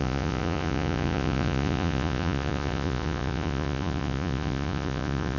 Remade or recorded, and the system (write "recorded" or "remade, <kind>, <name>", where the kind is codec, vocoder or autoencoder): remade, vocoder, Vocos